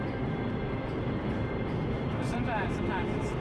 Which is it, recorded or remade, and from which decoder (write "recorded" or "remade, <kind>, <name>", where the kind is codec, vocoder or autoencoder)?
recorded